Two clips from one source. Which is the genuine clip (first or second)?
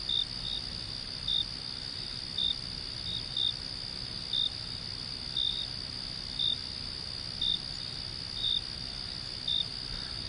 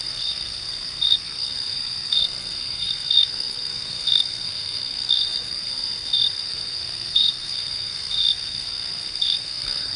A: first